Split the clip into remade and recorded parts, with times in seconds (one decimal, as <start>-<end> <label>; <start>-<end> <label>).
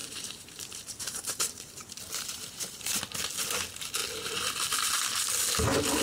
0.0-2.9 remade; 2.9-6.0 recorded